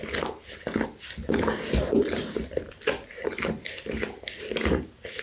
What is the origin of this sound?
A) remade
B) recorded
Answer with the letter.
B